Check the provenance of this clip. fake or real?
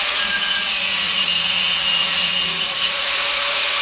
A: fake